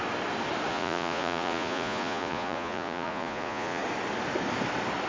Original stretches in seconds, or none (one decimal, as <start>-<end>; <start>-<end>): 0.0-0.7; 3.8-5.1